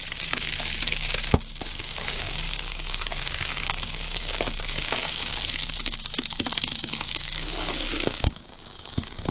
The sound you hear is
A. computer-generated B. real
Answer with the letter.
A